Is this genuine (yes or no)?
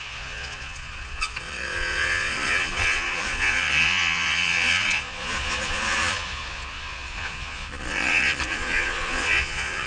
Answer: no